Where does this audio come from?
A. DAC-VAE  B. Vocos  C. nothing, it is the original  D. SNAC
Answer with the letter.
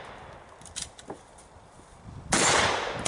C